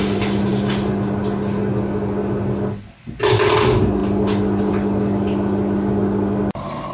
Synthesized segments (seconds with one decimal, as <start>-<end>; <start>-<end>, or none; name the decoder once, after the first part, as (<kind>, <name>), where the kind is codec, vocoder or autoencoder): none